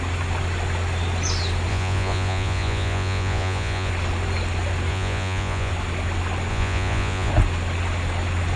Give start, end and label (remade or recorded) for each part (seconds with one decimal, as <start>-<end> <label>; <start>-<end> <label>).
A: 0.0-1.7 recorded; 1.7-3.9 remade; 3.9-4.9 recorded; 4.9-5.7 remade; 5.7-6.5 recorded; 6.5-7.3 remade; 7.3-8.6 recorded